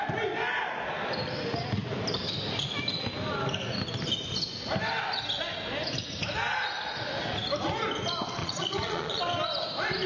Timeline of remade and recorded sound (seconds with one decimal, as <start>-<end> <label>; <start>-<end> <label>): 0.0-8.4 recorded; 8.4-9.2 remade; 9.2-10.1 recorded

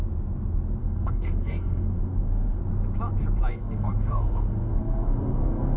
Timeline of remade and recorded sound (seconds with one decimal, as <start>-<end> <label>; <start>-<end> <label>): 0.0-0.8 recorded; 0.8-2.6 remade; 2.6-3.5 recorded; 3.5-5.8 remade

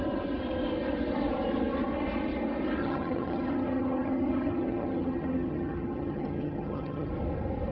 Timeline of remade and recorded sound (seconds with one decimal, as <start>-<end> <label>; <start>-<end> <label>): 0.0-2.8 recorded; 2.8-7.1 remade; 7.1-7.7 recorded

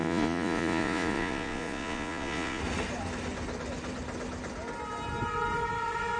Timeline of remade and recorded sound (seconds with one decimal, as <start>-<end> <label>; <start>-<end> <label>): 0.0-2.6 remade; 2.6-6.2 recorded

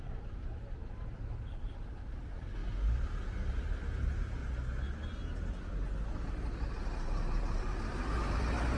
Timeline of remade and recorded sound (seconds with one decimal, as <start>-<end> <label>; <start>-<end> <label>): 0.0-0.8 remade; 0.8-1.4 recorded; 1.4-2.6 remade; 2.6-3.6 recorded; 3.6-4.4 remade; 4.4-6.7 recorded; 6.7-8.8 remade

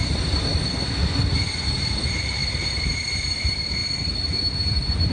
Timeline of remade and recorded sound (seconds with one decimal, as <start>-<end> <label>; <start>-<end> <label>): 0.0-0.5 remade; 0.5-1.6 recorded; 1.6-2.4 remade; 2.4-2.9 recorded; 2.9-3.8 remade; 3.8-4.4 recorded; 4.4-5.1 remade